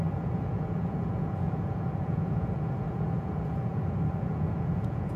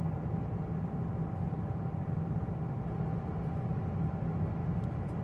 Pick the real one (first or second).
second